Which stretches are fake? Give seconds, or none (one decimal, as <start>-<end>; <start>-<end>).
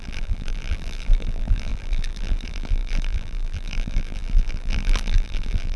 0.0-5.8